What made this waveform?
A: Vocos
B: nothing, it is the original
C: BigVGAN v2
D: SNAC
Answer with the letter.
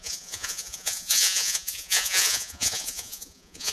A